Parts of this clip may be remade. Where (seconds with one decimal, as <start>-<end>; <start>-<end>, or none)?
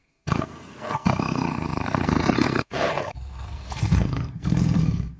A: 0.0-5.2